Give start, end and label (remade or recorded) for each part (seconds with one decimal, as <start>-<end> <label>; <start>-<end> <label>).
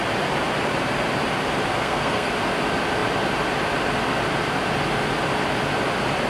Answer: 0.0-1.7 recorded; 1.7-2.3 remade; 2.3-6.3 recorded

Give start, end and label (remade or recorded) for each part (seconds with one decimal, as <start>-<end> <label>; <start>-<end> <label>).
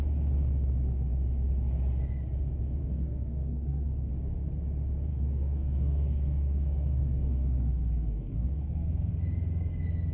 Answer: 0.0-2.8 recorded; 2.8-4.1 remade; 4.1-5.1 recorded; 5.1-9.1 remade; 9.1-10.1 recorded